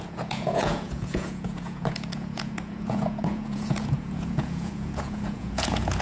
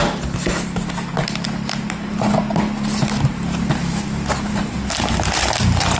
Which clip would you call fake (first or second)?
first